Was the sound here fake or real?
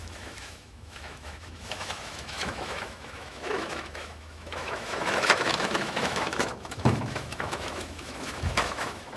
fake